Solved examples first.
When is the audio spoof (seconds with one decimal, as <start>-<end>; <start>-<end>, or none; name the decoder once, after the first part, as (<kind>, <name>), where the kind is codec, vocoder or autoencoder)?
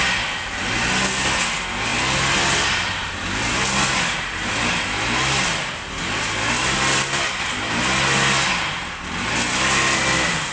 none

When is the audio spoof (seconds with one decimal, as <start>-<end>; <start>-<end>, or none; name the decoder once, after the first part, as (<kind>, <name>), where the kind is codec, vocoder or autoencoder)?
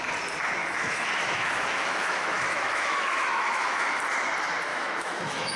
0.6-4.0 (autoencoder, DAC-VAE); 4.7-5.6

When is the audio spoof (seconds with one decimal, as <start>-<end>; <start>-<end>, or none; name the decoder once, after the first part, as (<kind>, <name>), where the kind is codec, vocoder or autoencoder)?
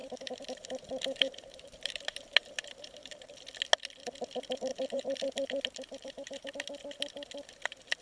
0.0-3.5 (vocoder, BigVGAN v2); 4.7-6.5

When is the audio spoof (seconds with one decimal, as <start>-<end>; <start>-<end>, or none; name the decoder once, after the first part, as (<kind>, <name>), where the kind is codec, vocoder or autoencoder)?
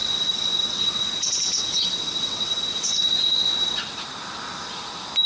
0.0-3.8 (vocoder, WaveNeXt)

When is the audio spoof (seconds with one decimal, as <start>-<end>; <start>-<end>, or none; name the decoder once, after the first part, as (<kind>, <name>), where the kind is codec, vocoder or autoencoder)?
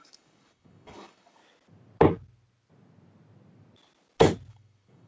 0.0-1.4 (codec, DAC); 4.5-5.1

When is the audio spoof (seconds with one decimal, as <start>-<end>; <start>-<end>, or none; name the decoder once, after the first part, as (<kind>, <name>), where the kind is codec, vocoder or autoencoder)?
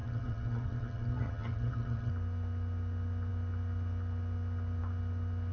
0.0-2.1 (vocoder, HiFi-GAN)